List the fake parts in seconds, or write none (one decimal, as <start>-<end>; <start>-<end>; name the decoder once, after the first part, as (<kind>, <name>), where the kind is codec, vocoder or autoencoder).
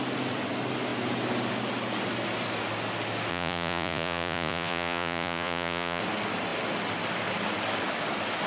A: 3.3-6.0 (vocoder, Vocos)